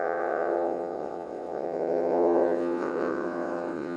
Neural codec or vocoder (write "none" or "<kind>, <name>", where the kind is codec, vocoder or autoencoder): vocoder, WaveNeXt